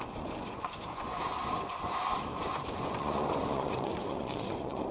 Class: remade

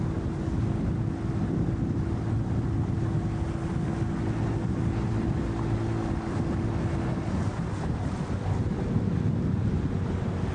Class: recorded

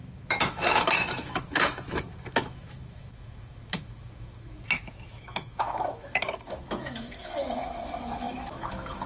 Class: remade